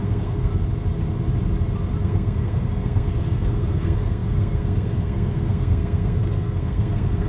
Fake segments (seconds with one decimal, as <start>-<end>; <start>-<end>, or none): 0.0-0.5; 2.0-7.3